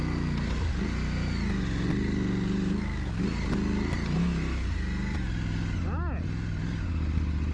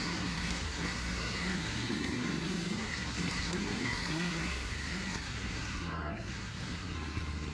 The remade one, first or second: second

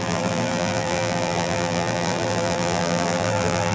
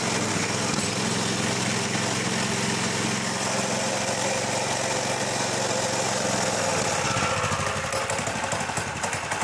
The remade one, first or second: first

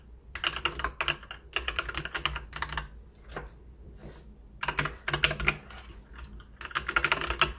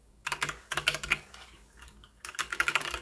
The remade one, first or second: second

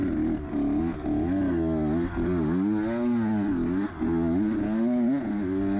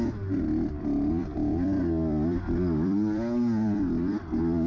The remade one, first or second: second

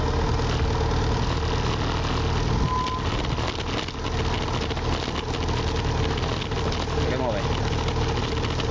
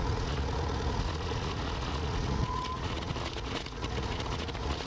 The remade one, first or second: second